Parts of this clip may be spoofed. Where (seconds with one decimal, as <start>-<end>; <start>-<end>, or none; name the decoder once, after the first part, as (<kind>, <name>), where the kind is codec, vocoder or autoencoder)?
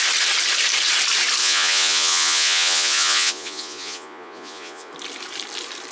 1.4-4.9 (vocoder, Vocos)